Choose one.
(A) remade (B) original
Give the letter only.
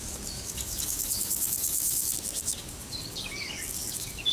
A